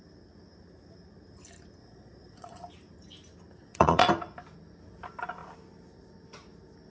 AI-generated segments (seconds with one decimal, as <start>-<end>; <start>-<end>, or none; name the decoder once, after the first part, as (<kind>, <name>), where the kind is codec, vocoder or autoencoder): 1.8-2.6 (vocoder, Vocos); 3.6-4.1